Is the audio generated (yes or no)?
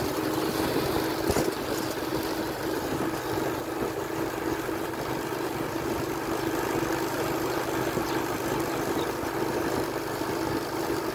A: no